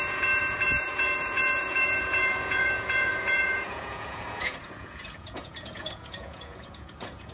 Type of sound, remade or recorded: remade